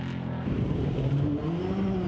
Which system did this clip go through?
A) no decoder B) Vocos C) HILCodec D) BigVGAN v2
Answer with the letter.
A